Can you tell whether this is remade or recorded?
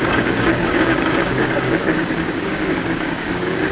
remade